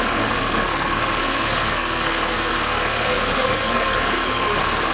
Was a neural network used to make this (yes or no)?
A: yes